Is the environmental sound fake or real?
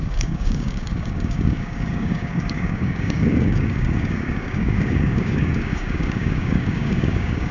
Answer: fake